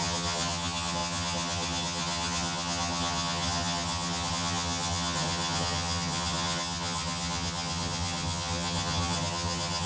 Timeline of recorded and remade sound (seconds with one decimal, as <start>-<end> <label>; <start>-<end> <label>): 0.0-9.9 remade